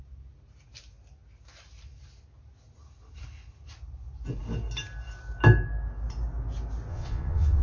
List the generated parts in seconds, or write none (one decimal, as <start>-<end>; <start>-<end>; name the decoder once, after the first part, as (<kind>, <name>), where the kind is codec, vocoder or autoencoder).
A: 6.9-7.6 (vocoder, Vocos)